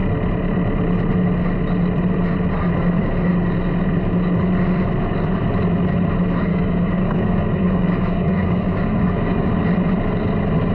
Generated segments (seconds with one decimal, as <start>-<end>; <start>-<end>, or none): 6.5-9.5